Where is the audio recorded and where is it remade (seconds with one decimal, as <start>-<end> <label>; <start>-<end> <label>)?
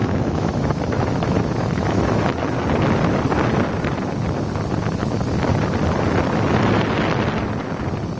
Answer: 0.0-2.4 remade; 2.4-8.2 recorded